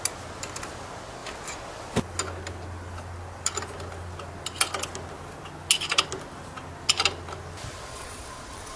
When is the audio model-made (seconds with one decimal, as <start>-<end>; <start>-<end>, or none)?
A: 7.9-8.8